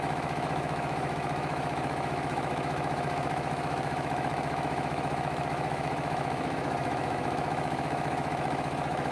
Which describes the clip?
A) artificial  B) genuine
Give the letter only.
A